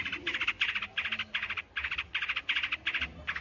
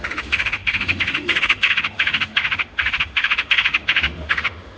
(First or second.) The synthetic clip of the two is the second